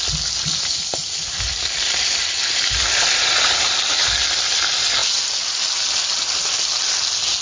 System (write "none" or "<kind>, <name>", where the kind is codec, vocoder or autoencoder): none